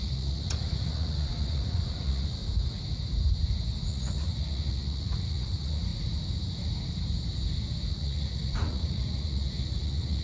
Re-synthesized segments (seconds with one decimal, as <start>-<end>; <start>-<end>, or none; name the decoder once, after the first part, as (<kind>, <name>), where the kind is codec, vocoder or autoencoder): 0.0-2.4 (vocoder, Vocos); 3.9-5.9; 7.9-10.2